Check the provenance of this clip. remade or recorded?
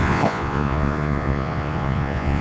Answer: remade